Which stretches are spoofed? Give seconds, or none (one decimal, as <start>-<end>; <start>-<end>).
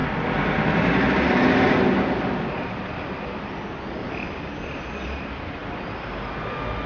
none